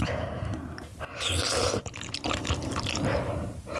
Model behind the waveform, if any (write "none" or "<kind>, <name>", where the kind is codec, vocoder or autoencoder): none